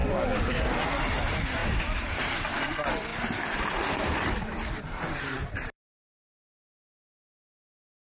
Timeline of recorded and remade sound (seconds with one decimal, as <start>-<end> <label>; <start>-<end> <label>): 0.0-1.6 recorded; 1.6-2.3 remade; 2.3-3.1 recorded; 3.1-4.8 remade; 4.8-5.4 recorded; 5.4-8.2 remade